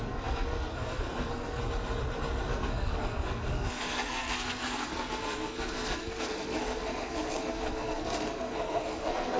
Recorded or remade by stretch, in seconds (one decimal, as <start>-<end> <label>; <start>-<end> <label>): 0.0-1.6 remade; 1.6-2.5 recorded; 2.5-9.4 remade